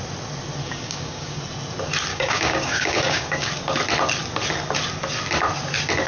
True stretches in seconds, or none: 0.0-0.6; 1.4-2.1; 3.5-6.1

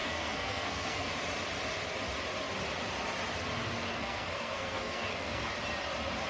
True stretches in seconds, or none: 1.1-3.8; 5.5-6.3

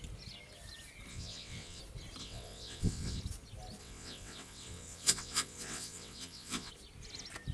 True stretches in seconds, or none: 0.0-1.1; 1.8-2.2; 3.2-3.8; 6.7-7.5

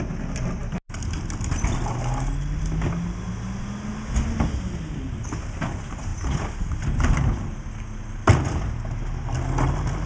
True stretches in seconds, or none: 0.0-10.1

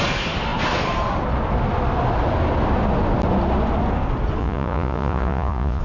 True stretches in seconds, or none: 0.0-4.4